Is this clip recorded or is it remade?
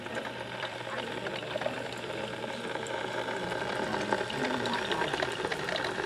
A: remade